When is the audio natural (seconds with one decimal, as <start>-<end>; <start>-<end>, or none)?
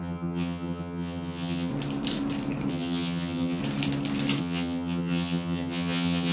1.7-2.7; 3.6-4.4